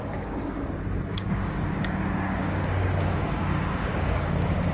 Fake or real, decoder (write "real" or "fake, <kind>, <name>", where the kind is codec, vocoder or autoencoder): fake, codec, DAC